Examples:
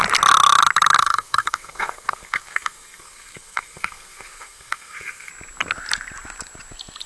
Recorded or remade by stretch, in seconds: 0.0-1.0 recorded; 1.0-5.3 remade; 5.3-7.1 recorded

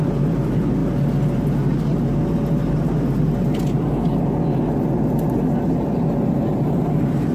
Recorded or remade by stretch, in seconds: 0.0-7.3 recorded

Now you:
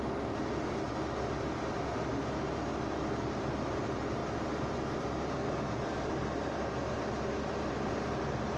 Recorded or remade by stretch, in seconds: 0.0-8.6 recorded

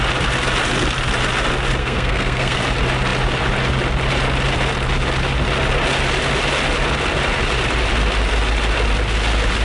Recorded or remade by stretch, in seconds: 0.0-1.8 recorded; 1.8-2.6 remade; 2.6-9.6 recorded

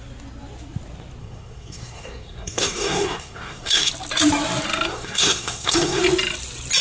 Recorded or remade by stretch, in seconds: 0.0-1.2 recorded; 1.2-3.9 remade; 3.9-4.9 recorded; 4.9-6.0 remade; 6.0-6.8 recorded

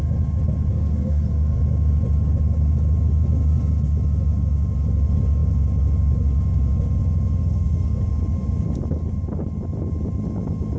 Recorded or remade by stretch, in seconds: 0.0-0.7 recorded; 0.7-1.6 remade; 1.6-7.4 recorded; 7.4-8.0 remade; 8.0-10.8 recorded

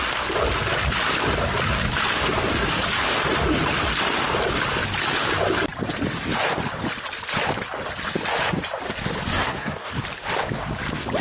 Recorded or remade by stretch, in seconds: 0.0-9.3 recorded; 9.3-9.9 remade; 9.9-11.2 recorded